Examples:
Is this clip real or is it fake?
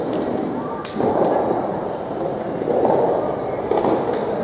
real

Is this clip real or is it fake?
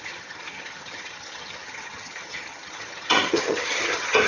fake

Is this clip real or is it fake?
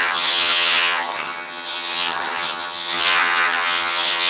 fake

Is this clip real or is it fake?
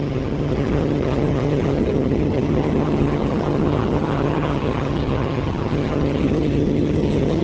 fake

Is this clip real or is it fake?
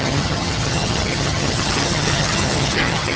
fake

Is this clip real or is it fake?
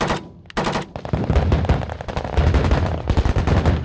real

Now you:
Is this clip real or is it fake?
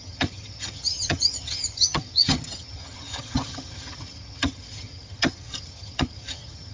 fake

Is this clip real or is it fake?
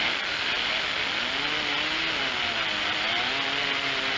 real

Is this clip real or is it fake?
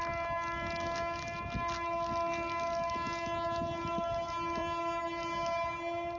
real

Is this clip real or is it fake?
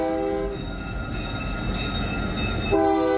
real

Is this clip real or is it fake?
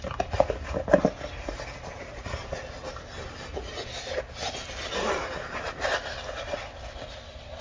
real